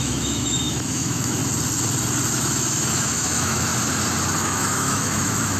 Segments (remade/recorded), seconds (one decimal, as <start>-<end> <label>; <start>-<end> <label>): 0.0-1.4 remade; 1.4-2.4 recorded; 2.4-3.7 remade; 3.7-4.4 recorded; 4.4-5.6 remade

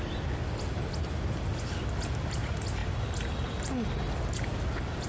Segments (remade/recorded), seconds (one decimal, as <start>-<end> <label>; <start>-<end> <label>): 0.0-2.8 recorded; 2.8-3.6 remade; 3.6-5.1 recorded